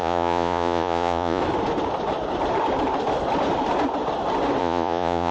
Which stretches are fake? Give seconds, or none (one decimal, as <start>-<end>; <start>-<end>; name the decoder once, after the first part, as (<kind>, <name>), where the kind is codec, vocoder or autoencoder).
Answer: 0.0-1.4 (vocoder, Vocos); 4.6-5.3